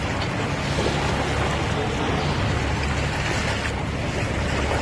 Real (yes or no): yes